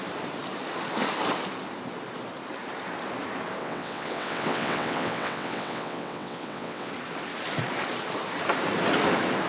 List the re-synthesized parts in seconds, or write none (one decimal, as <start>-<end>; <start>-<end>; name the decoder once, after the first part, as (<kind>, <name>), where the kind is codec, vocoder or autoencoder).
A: 3.6-6.9 (vocoder, WaveNeXt)